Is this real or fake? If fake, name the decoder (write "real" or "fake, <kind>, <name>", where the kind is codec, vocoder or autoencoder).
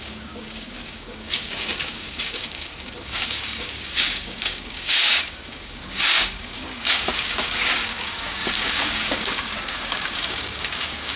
fake, codec, DAC